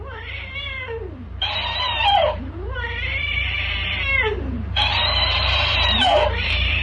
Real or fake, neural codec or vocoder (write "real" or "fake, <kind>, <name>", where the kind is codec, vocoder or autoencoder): fake, vocoder, BigVGAN v2